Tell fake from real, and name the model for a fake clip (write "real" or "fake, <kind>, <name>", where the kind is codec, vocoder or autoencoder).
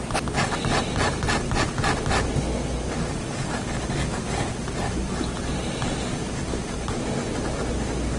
real